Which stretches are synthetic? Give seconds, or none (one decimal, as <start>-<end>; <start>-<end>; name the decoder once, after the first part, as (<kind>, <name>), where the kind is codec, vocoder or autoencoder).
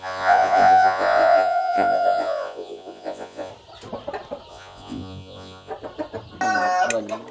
0.0-3.5 (vocoder, Vocos); 4.5-5.7